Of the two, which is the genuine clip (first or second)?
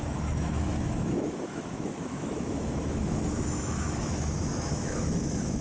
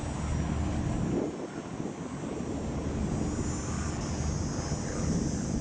second